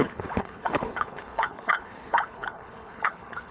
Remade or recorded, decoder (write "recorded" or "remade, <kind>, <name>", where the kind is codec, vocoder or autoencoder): remade, codec, HILCodec